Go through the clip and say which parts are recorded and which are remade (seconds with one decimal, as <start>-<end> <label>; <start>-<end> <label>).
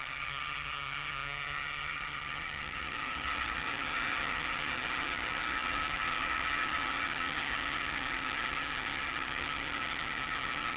0.0-10.8 remade